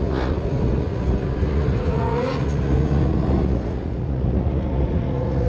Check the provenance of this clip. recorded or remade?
remade